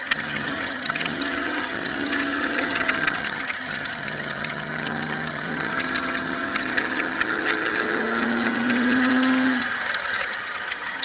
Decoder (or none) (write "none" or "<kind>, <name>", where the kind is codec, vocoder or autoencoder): vocoder, HiFi-GAN